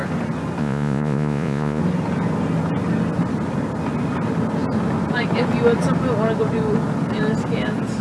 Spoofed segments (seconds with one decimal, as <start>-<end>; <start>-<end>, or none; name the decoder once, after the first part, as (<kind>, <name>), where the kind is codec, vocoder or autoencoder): 0.6-1.8 (vocoder, Vocos)